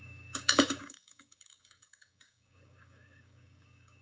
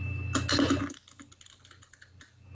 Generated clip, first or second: first